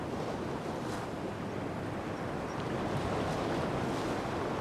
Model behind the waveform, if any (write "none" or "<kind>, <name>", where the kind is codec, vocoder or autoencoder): none